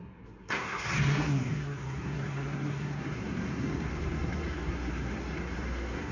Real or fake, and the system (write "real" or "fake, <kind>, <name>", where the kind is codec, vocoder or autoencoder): fake, codec, SNAC